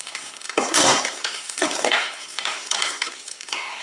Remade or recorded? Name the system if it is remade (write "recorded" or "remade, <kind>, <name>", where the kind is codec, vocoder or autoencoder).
remade, codec, SNAC